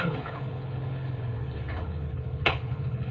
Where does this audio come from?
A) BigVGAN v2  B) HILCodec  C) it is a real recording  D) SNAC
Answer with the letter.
B